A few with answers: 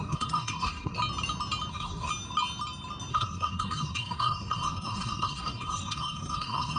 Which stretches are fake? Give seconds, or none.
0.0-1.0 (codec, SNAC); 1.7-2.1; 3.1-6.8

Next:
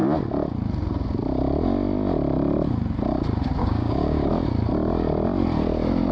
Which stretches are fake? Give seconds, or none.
3.6-4.3 (codec, DAC)